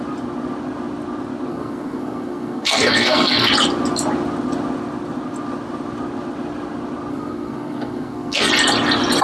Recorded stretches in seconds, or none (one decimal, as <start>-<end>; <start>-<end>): 0.0-1.5; 3.5-7.1; 8.5-9.2